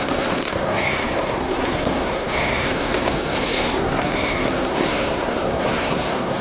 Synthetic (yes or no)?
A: yes